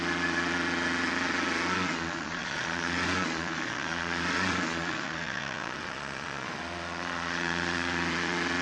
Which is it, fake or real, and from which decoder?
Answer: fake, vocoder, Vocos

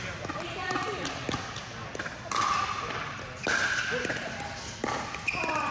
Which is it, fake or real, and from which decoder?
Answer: real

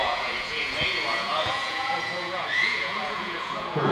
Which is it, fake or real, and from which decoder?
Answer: fake, vocoder, Vocos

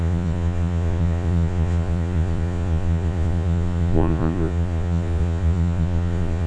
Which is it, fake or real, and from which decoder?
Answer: fake, vocoder, Vocos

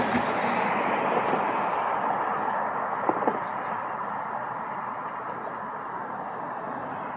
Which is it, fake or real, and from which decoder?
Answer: real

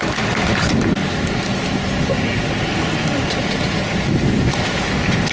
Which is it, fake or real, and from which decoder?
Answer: real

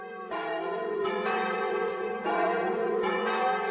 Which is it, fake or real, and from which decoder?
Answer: fake, vocoder, Vocos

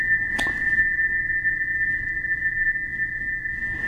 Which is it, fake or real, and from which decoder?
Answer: fake, vocoder, Vocos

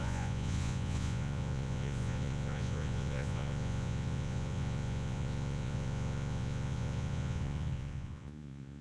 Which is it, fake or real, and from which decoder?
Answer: fake, vocoder, Vocos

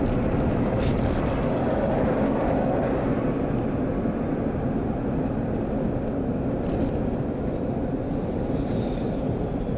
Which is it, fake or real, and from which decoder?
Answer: real